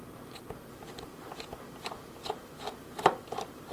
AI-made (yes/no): no